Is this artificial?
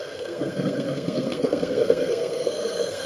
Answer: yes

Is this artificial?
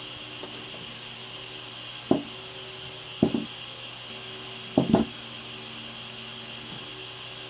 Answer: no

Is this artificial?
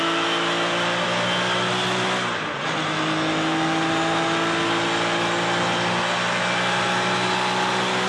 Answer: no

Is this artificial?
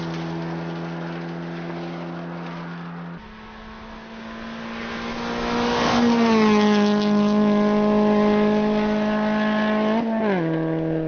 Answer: no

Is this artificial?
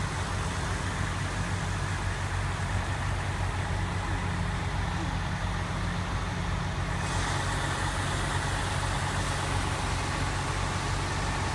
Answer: no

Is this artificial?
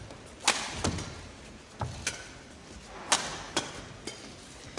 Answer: no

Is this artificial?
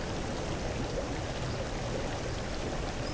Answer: no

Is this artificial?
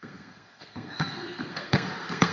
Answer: yes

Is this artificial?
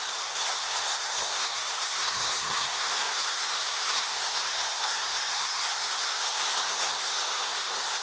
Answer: yes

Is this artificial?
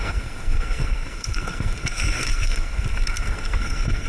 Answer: yes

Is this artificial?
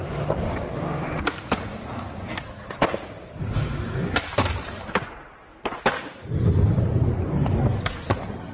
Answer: no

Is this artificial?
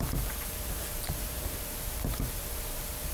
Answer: yes